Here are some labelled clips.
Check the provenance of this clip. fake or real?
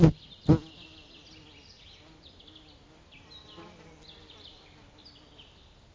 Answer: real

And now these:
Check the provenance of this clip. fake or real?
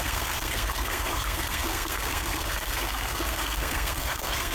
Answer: fake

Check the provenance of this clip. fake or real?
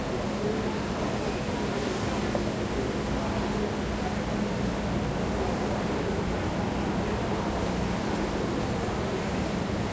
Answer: real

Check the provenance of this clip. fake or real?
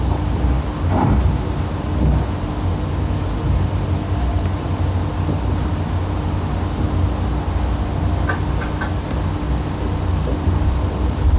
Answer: real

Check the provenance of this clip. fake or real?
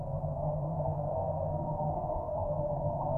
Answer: fake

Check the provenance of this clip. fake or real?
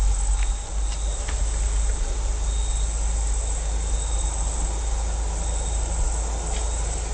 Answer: real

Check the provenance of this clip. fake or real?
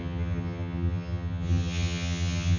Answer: fake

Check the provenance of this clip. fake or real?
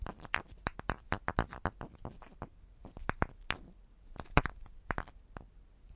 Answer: real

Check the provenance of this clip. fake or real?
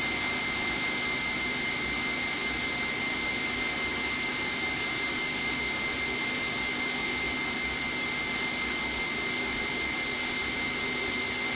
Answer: real